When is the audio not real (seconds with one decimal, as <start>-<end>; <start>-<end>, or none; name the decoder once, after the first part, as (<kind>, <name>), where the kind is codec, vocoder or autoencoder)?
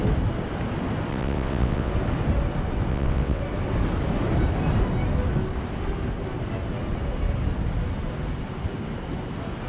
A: 1.1-1.9 (vocoder, WaveNeXt); 2.9-3.4